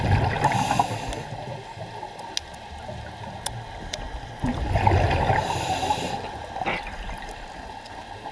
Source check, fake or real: real